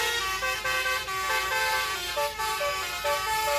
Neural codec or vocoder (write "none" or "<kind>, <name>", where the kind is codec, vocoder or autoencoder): none